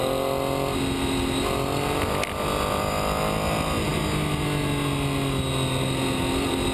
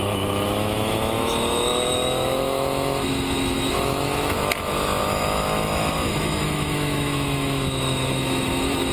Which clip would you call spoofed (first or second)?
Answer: second